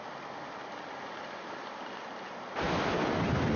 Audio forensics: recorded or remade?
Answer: recorded